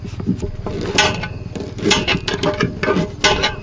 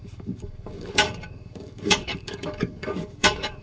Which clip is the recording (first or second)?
first